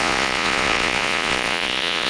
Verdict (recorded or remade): remade